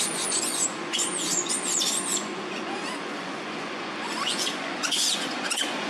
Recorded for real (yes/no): no